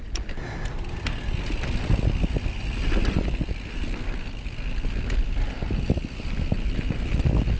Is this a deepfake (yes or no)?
no